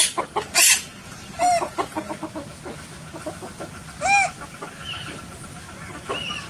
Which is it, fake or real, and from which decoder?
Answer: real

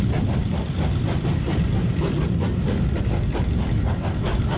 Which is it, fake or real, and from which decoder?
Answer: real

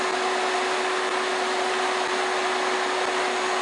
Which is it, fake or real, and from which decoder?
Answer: real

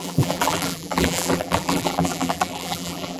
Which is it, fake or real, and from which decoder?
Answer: fake, vocoder, BigVGAN v2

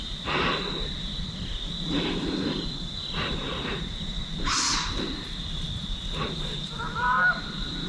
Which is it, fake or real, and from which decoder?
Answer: real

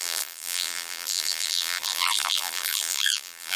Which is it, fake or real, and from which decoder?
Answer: fake, vocoder, BigVGAN v2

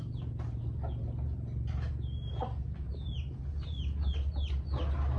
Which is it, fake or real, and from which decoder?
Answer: real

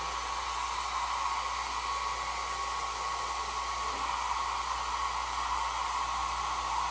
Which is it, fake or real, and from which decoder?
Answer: real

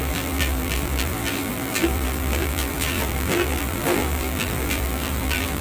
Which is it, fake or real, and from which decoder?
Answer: fake, vocoder, BigVGAN v2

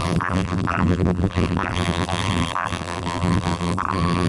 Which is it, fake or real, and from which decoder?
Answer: fake, vocoder, BigVGAN v2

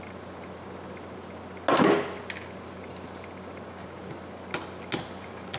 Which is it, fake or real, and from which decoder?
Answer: real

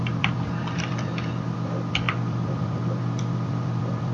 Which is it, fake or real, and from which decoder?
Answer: fake, vocoder, BigVGAN v2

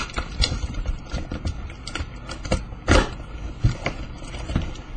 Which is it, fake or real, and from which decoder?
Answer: fake, vocoder, BigVGAN v2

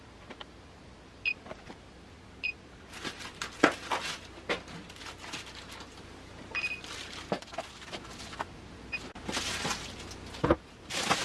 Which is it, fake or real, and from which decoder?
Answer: real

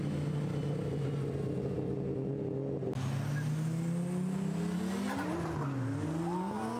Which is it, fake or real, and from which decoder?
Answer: real